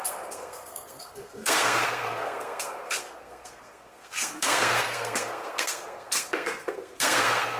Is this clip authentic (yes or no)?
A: no